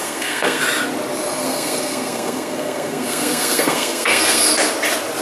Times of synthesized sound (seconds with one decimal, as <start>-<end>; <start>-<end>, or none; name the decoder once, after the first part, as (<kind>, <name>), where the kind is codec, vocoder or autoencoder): 0.0-0.6 (codec, SNAC); 1.4-4.5